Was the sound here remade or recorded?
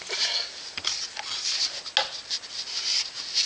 recorded